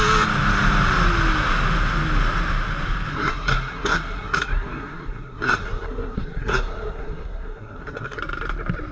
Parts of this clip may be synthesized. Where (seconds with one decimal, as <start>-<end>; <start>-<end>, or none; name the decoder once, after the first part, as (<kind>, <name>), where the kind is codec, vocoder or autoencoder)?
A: 3.1-8.2 (codec, SNAC)